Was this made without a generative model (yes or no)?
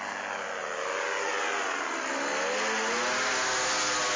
yes